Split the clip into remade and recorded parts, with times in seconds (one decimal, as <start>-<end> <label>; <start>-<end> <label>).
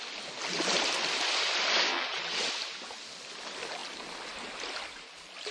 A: 0.0-1.9 recorded; 1.9-2.5 remade; 2.5-5.5 recorded